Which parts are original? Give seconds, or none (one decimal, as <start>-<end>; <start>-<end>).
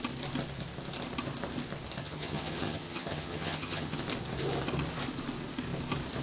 0.0-2.0; 4.0-6.2